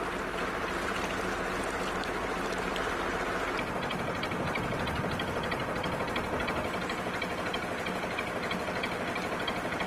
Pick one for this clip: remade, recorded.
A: recorded